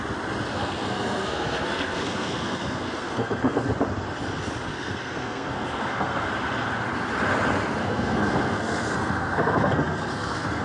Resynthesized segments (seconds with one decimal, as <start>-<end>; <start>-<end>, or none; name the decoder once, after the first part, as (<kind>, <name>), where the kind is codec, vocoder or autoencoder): 0.5-3.7 (codec, SNAC); 4.7-6.3; 7.8-10.6

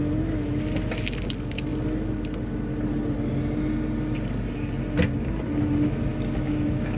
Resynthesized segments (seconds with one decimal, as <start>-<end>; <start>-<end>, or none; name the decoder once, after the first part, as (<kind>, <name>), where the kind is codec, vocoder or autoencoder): none

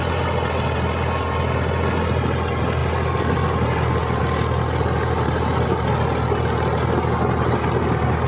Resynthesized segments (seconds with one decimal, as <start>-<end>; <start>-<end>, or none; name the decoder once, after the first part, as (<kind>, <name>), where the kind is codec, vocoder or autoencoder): none

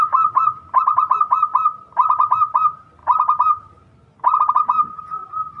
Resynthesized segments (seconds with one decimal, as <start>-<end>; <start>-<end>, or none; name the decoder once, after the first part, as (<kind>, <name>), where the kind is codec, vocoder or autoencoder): none

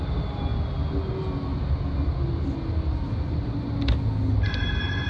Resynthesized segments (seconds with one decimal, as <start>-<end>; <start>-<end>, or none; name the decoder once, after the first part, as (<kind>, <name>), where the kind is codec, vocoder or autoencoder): none